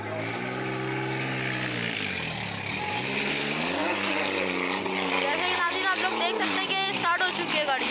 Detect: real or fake real